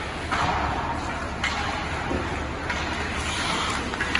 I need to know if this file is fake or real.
real